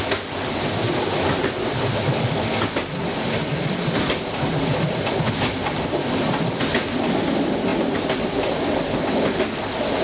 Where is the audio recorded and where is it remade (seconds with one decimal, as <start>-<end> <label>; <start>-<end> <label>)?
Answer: 0.0-10.0 recorded